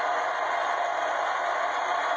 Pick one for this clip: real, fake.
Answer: real